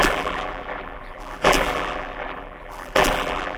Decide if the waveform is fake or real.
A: fake